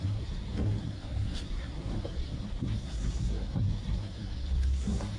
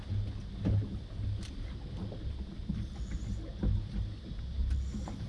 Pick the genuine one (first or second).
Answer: second